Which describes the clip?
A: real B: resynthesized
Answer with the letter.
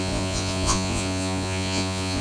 B